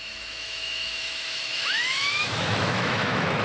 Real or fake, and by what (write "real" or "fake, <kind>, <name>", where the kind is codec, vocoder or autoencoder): fake, autoencoder, DAC-VAE